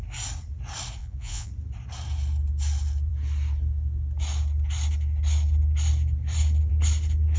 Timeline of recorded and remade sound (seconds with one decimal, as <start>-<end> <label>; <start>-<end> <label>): 0.0-1.0 recorded; 1.0-1.5 remade; 1.5-7.4 recorded